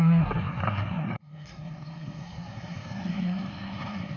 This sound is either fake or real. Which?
fake